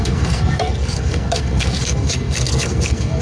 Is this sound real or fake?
fake